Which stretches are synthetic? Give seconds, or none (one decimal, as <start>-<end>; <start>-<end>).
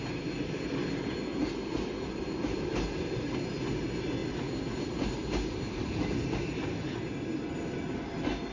none